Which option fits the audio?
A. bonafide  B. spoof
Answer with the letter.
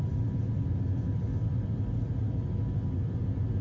A